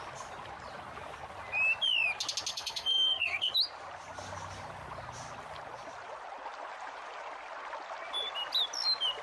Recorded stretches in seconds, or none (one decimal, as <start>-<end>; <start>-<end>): 0.0-2.5; 3.5-9.2